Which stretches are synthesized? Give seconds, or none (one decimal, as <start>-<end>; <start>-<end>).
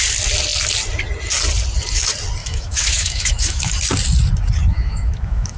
2.4-3.7; 4.7-5.6